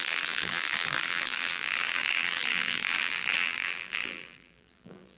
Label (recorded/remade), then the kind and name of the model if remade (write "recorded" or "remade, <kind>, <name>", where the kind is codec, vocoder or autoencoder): remade, vocoder, BigVGAN v2